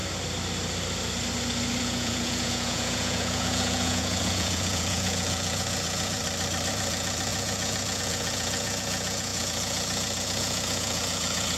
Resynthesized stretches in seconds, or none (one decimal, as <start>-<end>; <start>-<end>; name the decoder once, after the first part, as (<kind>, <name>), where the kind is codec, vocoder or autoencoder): 1.8-6.2 (vocoder, Vocos); 6.7-11.6